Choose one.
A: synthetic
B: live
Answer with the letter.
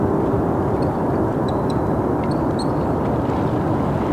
B